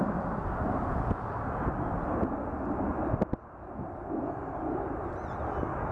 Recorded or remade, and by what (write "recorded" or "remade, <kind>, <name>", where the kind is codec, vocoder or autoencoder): recorded